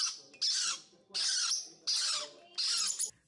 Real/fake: real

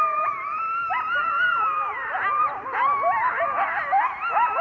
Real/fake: fake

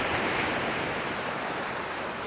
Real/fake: fake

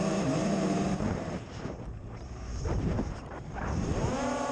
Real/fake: fake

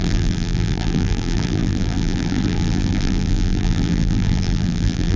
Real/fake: fake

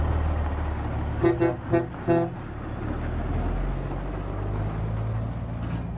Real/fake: real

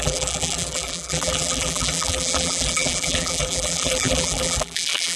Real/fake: fake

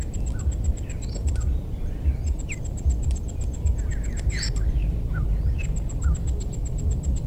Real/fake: fake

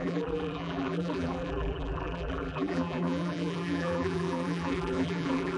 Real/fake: fake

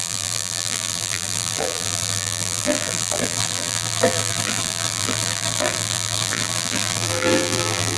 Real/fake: fake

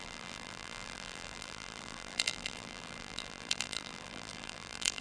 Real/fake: fake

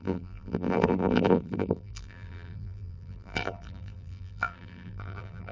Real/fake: fake